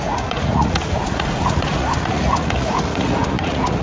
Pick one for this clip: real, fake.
fake